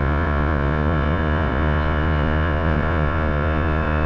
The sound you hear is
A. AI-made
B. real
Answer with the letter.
A